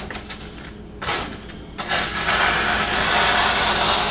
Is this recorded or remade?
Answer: recorded